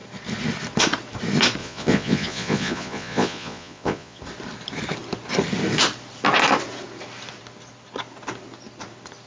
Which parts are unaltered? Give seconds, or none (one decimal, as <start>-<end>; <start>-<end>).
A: 0.0-1.6; 4.2-9.3